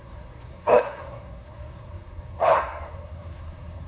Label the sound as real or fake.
fake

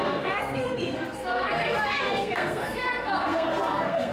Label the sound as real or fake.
fake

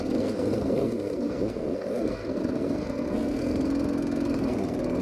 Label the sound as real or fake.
fake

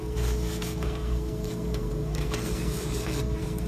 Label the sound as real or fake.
fake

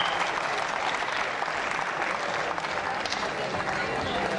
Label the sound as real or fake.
real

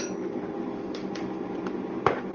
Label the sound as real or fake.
real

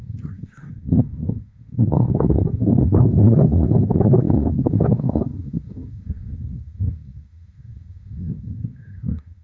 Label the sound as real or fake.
fake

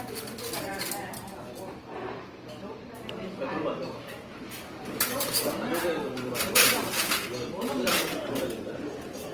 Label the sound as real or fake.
real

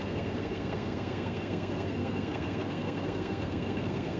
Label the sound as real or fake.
fake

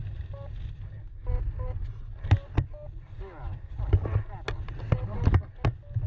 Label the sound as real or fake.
real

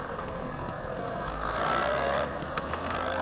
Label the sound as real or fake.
fake